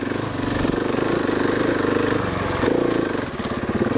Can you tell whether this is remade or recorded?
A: recorded